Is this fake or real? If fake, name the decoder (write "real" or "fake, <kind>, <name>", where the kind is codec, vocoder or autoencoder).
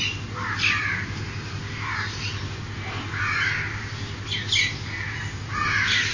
real